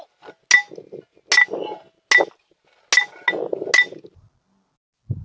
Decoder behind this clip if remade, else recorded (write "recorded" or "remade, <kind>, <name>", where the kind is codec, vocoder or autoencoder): recorded